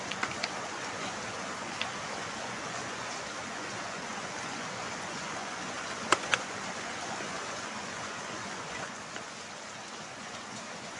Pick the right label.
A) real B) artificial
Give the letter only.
B